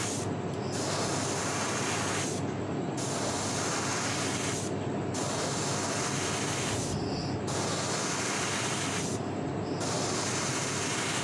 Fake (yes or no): no